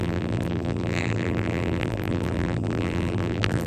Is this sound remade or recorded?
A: remade